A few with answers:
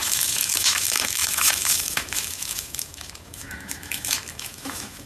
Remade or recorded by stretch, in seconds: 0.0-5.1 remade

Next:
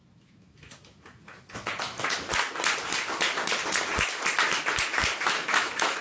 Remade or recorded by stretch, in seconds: 0.0-2.3 remade; 2.3-5.3 recorded; 5.3-6.0 remade

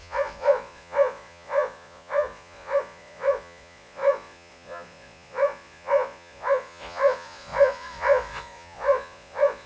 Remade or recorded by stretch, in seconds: 0.0-9.7 remade

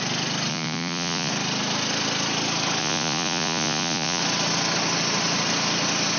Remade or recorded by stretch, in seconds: 0.0-0.5 recorded; 0.5-1.3 remade; 1.3-2.8 recorded; 2.8-4.2 remade; 4.2-6.2 recorded

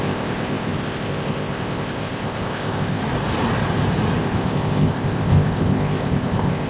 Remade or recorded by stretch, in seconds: 0.0-3.0 remade; 3.0-4.2 recorded; 4.2-6.7 remade